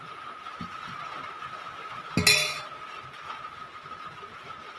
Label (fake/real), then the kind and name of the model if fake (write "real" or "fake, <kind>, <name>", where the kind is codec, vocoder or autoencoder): real